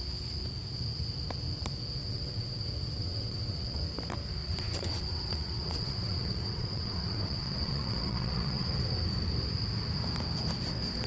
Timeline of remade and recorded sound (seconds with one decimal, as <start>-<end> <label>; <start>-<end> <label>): 0.0-2.0 recorded; 2.0-2.6 remade; 2.6-3.0 recorded; 3.0-3.8 remade; 3.8-4.4 recorded; 4.4-8.8 remade; 8.8-11.1 recorded